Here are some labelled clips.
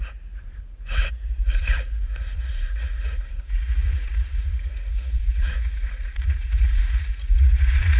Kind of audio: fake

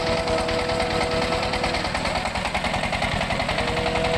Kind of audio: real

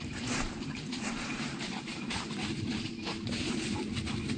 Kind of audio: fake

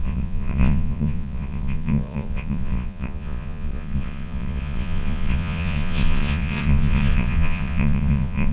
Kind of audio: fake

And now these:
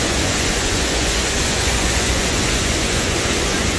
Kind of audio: fake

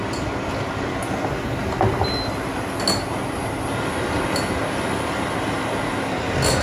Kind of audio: real